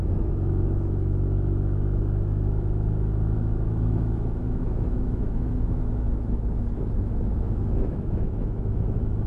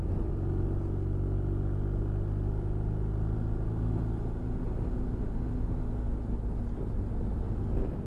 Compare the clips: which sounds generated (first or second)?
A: first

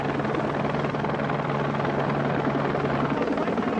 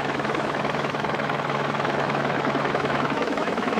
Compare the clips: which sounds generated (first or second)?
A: second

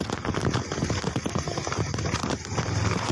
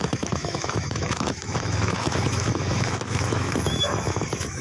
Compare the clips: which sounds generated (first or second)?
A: second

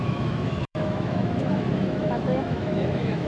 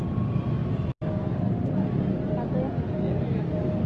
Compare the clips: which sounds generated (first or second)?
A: first